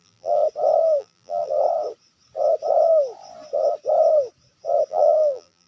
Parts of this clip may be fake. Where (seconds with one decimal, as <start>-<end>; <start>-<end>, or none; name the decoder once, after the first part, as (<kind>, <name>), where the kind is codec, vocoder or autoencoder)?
0.0-0.4 (vocoder, BigVGAN v2); 1.0-1.5; 4.9-5.7